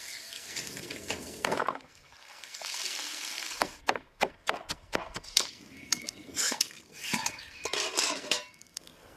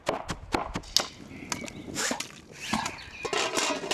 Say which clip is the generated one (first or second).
first